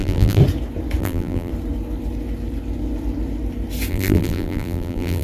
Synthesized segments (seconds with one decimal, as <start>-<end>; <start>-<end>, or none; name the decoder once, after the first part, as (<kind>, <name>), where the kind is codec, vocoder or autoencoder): 0.0-0.4 (vocoder, BigVGAN v2); 1.0-1.5; 3.9-5.2